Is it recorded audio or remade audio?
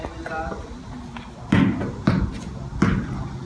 recorded